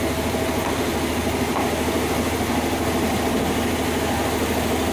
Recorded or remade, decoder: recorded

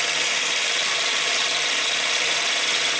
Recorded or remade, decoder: recorded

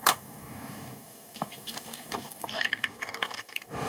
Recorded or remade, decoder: remade, codec, DAC